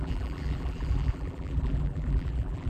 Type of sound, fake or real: fake